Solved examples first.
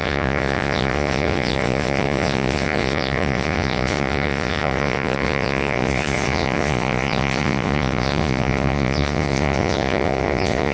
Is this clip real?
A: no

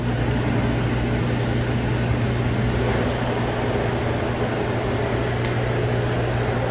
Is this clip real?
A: yes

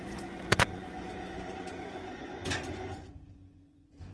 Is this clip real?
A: no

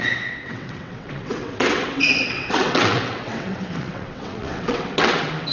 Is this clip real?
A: no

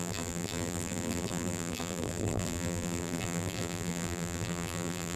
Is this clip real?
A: no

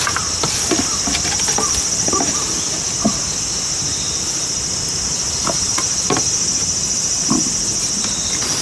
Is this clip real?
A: yes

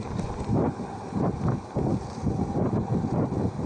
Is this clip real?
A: yes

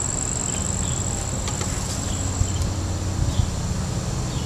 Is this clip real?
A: yes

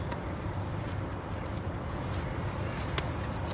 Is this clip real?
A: yes